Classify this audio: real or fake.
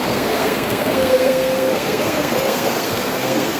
fake